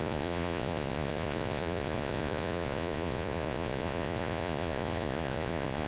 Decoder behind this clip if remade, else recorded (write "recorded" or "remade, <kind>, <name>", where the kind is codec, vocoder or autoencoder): remade, vocoder, Vocos